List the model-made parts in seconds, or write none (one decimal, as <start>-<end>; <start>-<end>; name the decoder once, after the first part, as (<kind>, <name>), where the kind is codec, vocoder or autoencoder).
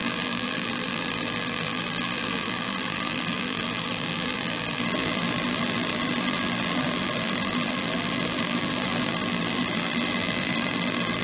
0.0-11.2 (vocoder, BigVGAN v2)